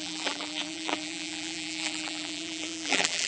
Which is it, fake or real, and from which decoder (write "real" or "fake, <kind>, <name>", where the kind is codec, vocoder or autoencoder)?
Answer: fake, vocoder, BigVGAN v2